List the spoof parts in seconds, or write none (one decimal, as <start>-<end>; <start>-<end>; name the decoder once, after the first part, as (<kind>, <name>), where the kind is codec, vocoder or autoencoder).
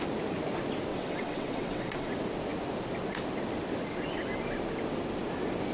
0.9-2.1 (vocoder, WaveNeXt)